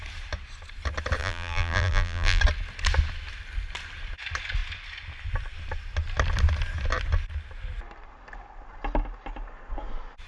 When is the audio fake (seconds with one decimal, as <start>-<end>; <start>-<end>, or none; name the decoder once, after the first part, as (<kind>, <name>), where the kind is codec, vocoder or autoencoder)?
1.2-2.4 (vocoder, BigVGAN v2)